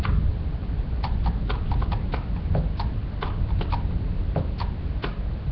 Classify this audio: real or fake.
real